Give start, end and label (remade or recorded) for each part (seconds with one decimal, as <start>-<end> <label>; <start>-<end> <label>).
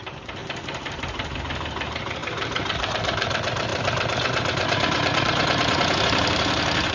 0.0-0.4 remade; 0.4-1.4 recorded; 1.4-6.9 remade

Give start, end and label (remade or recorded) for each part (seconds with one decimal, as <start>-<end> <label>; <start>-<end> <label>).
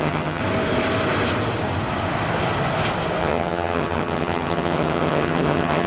0.0-0.4 remade; 0.4-3.2 recorded; 3.2-5.9 remade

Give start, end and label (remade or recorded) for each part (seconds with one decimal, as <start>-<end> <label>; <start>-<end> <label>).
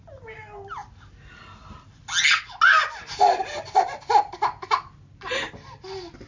0.0-6.3 recorded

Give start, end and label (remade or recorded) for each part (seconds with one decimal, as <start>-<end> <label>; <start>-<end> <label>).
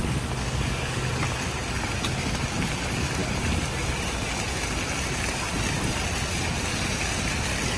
0.0-1.1 remade; 1.1-7.8 recorded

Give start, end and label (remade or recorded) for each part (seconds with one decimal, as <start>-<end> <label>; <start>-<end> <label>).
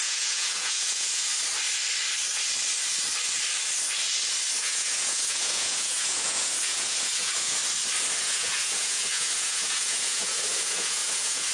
0.0-1.3 remade; 1.3-4.6 recorded; 4.6-7.6 remade; 7.6-8.2 recorded; 8.2-11.5 remade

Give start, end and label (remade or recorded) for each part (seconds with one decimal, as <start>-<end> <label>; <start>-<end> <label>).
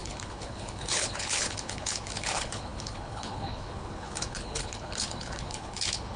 0.0-6.2 remade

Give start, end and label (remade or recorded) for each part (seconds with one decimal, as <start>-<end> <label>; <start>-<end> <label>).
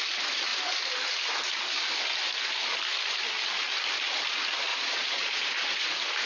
0.0-4.7 recorded; 4.7-5.4 remade; 5.4-6.3 recorded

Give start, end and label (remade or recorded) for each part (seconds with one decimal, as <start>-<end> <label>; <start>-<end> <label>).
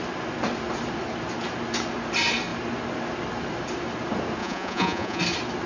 0.0-4.4 recorded; 4.4-5.2 remade; 5.2-5.7 recorded